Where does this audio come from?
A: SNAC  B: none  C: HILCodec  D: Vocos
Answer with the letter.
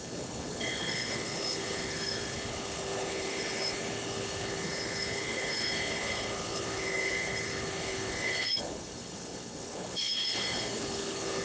C